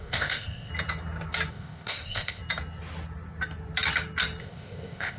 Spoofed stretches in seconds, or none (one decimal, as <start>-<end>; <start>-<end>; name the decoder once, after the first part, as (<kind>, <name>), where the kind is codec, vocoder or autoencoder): 0.0-0.7 (codec, ZipCodec); 1.5-2.4; 4.4-5.2